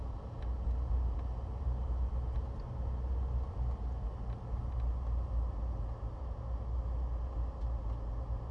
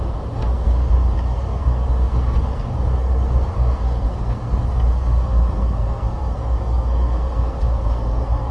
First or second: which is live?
first